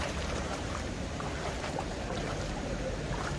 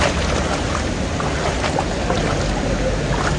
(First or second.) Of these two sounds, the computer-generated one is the first